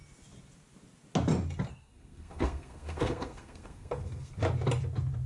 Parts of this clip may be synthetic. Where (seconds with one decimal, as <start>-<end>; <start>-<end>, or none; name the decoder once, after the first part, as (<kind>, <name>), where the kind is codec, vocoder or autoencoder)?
1.7-4.3 (codec, SNAC)